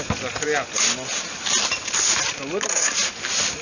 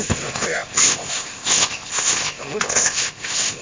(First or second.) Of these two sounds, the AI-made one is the second